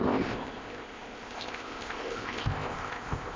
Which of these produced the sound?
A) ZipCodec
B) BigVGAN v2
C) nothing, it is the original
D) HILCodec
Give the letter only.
A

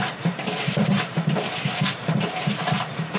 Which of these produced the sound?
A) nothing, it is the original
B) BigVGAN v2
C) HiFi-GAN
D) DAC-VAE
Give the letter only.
B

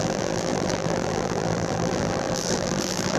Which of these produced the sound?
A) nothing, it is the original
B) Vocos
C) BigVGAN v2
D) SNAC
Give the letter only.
C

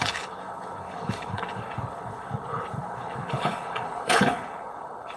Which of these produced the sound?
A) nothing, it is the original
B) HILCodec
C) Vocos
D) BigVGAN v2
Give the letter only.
B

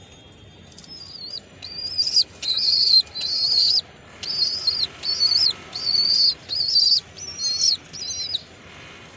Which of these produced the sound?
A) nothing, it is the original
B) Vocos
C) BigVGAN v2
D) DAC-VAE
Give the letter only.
A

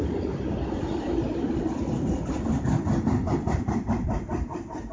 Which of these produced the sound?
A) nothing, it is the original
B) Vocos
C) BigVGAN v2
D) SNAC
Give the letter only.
C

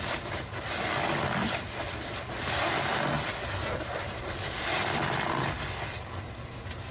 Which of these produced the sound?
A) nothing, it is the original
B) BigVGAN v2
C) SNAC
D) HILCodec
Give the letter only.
A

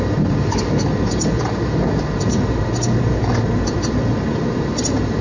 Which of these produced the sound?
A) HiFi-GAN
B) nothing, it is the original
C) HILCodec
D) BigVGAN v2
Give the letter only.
D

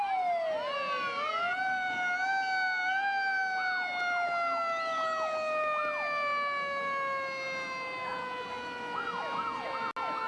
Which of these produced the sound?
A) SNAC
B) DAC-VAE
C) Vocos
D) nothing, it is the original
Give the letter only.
D